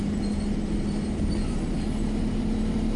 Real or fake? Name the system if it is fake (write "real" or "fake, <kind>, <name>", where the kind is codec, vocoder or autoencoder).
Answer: real